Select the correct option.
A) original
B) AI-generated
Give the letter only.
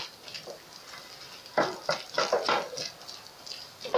A